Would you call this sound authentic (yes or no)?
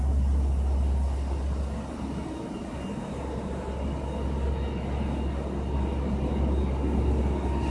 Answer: yes